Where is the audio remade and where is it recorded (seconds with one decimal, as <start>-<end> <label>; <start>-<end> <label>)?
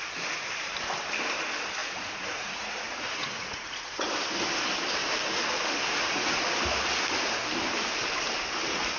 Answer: 0.0-1.8 recorded; 1.8-4.1 remade; 4.1-5.9 recorded; 5.9-6.4 remade; 6.4-9.0 recorded